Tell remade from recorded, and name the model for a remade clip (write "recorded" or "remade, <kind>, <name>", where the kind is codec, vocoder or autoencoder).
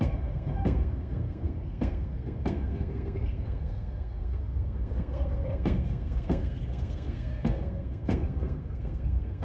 remade, codec, SNAC